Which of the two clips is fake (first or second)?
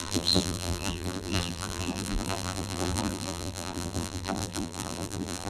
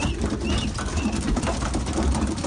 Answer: first